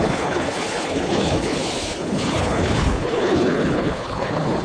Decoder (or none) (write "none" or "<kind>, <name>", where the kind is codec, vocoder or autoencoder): codec, HILCodec